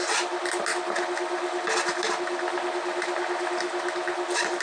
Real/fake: real